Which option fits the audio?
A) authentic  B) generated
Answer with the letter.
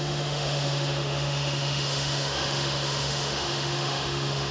B